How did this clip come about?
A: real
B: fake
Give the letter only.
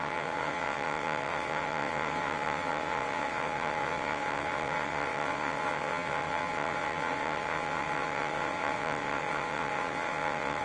B